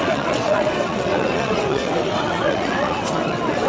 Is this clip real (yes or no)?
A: no